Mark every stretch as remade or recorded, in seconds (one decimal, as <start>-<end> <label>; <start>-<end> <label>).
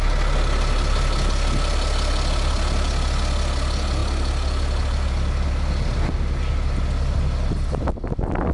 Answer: 0.0-8.5 recorded